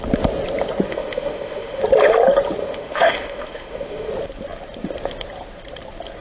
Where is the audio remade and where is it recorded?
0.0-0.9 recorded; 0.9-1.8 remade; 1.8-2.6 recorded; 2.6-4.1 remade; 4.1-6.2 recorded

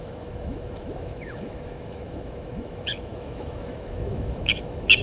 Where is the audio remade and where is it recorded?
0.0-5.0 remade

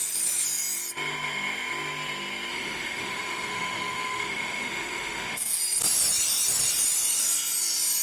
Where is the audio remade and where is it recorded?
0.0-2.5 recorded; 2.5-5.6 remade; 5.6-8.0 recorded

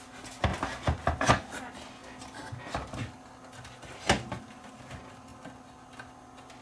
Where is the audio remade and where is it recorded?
0.0-6.6 recorded

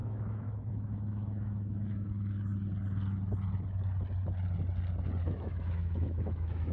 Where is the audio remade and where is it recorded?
0.0-2.5 remade; 2.5-5.2 recorded; 5.2-6.7 remade

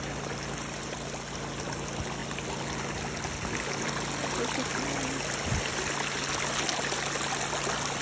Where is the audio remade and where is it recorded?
0.0-8.0 recorded